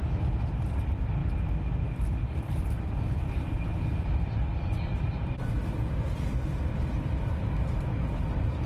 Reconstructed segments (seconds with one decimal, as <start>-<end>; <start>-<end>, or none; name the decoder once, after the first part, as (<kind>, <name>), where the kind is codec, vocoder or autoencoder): none